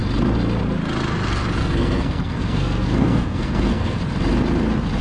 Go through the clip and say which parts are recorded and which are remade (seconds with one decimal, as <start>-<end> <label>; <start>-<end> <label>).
0.0-1.6 recorded; 1.6-4.0 remade; 4.0-5.0 recorded